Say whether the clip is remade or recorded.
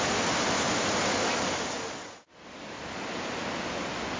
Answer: recorded